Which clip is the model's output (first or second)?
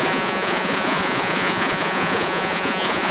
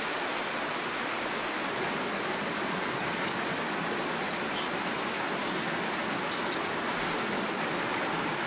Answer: first